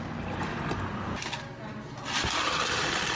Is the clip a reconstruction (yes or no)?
no